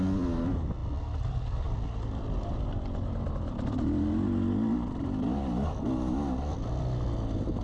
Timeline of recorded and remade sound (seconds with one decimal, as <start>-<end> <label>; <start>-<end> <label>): 0.0-7.6 recorded